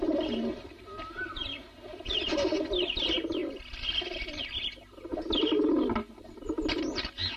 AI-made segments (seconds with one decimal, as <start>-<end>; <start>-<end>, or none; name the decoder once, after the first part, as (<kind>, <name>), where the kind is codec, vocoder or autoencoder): none